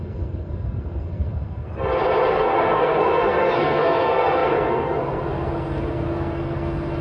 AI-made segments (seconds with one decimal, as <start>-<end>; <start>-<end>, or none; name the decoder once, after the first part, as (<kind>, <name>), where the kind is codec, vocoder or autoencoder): 0.0-1.7 (codec, SNAC); 2.3-7.0